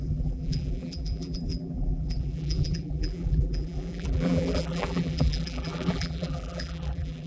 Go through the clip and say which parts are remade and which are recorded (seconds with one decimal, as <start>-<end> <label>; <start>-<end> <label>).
0.0-7.3 remade